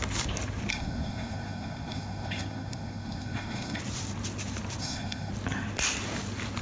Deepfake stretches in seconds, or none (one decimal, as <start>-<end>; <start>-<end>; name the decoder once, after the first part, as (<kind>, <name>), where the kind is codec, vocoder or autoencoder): 0.7-3.8 (codec, SNAC); 4.8-5.3